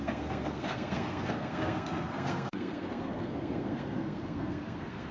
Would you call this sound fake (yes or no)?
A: yes